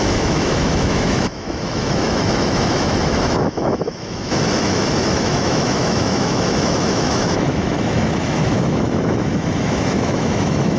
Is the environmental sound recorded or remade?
remade